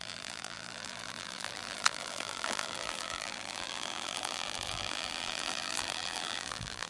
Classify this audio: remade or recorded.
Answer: remade